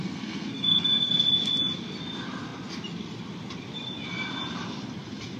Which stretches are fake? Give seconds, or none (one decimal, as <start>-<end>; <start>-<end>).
0.0-1.1